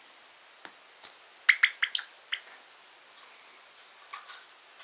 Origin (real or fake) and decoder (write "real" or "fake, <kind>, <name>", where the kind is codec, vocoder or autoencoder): real